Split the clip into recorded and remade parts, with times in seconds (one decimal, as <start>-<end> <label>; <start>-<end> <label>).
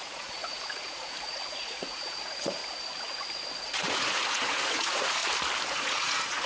0.0-2.6 remade; 2.6-3.6 recorded; 3.6-5.2 remade; 5.2-5.7 recorded; 5.7-6.5 remade